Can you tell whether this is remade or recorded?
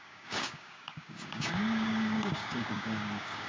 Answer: remade